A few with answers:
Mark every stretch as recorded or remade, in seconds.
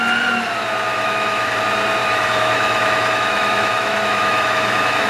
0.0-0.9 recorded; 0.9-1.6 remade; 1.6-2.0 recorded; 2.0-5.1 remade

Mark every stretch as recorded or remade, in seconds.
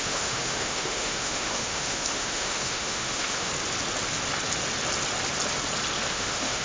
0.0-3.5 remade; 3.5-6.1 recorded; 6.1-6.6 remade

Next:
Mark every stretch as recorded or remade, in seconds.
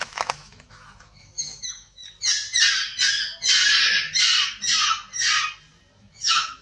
0.0-2.0 remade; 2.0-6.0 recorded; 6.0-6.6 remade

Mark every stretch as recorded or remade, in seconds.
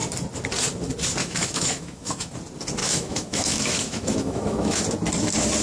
0.0-1.2 recorded; 1.2-2.3 remade; 2.3-2.8 recorded; 2.8-4.8 remade; 4.8-5.6 recorded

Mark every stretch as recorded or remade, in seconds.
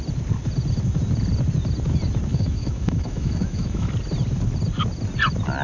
0.0-2.3 recorded; 2.3-3.9 remade; 3.9-5.6 recorded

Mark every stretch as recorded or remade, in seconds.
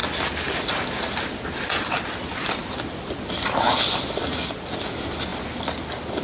0.0-6.2 recorded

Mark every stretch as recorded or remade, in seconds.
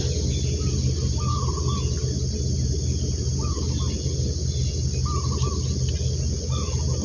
0.0-7.0 recorded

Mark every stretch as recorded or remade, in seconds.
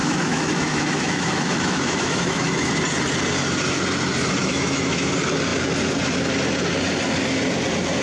0.0-2.7 remade; 2.7-4.4 recorded; 4.4-5.1 remade; 5.1-8.0 recorded